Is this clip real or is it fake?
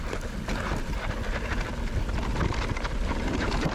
real